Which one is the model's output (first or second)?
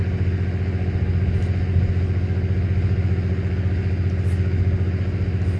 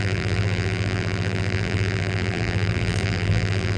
second